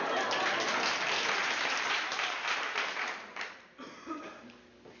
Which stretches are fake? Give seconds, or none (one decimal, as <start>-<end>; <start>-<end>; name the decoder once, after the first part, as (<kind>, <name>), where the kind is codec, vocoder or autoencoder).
1.4-4.4 (vocoder, BigVGAN v2)